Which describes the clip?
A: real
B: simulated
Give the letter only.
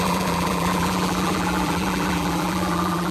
B